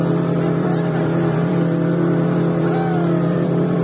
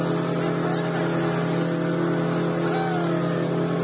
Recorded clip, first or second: second